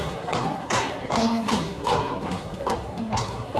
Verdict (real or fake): fake